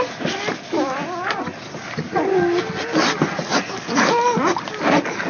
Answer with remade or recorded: recorded